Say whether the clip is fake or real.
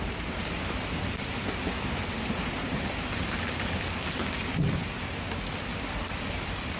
real